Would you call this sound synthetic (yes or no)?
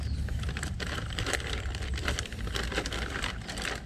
yes